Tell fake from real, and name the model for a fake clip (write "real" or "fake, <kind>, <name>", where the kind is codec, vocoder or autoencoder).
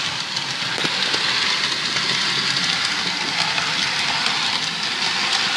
real